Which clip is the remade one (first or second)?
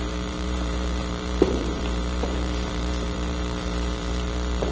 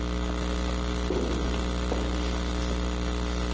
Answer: first